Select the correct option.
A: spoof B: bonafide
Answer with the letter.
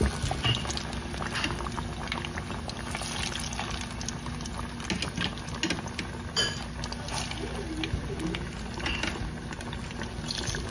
B